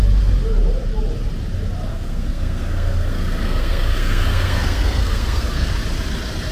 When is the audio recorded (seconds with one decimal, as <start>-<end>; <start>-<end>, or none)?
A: 0.0-1.9; 5.7-6.5